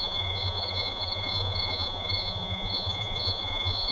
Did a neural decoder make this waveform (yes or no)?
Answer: yes